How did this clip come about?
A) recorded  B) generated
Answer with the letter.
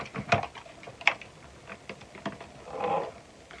A